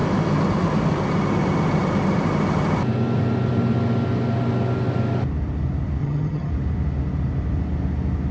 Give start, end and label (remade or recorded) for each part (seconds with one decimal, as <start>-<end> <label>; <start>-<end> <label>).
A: 0.0-6.0 recorded; 6.0-6.5 remade; 6.5-8.3 recorded